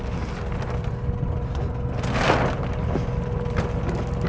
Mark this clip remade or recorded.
recorded